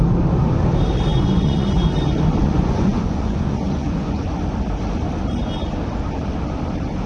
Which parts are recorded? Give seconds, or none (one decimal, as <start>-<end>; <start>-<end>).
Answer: 0.0-1.1; 1.8-2.4; 4.2-7.1